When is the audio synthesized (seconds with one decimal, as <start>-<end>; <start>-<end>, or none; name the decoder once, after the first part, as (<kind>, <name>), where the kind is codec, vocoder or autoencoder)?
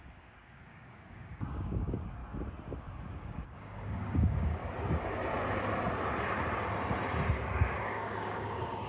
0.0-2.2 (codec, DAC); 2.8-4.6; 7.3-8.9